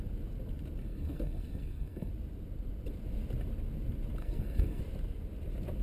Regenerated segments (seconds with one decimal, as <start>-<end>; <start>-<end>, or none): 0.8-2.1; 4.2-4.8